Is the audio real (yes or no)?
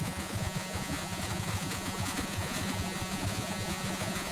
no